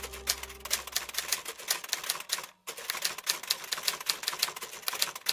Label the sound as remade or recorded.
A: recorded